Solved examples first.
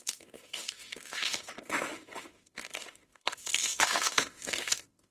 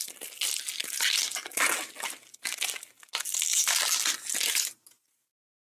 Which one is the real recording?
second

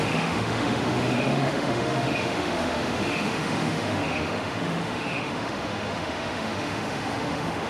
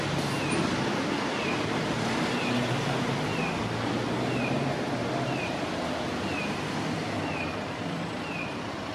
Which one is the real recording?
second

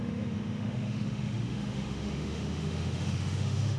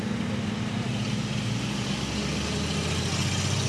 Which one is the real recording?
second